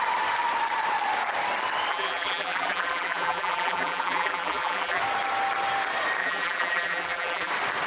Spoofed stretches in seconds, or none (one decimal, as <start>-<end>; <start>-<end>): 1.9-5.0; 6.2-7.5